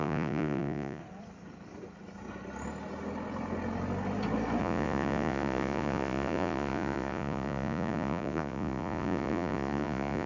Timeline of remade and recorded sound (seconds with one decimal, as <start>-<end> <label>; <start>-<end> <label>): 0.0-1.0 remade; 1.0-4.6 recorded; 4.6-10.3 remade